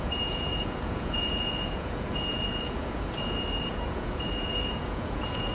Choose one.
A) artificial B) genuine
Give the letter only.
A